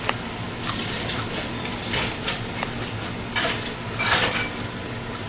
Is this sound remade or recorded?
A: recorded